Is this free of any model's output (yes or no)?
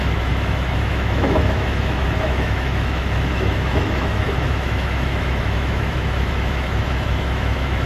no